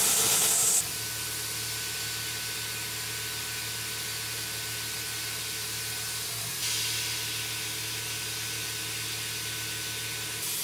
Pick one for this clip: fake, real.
real